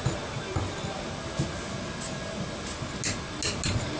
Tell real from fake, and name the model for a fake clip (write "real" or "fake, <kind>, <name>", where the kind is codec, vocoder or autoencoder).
real